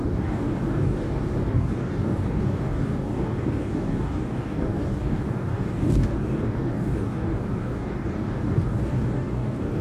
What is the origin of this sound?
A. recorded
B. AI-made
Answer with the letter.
B